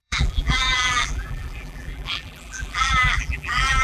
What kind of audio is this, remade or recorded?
remade